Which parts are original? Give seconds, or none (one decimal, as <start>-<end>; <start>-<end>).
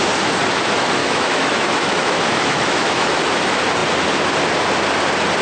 0.0-1.0; 3.2-5.4